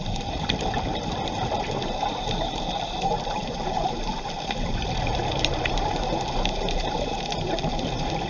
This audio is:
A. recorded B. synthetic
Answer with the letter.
B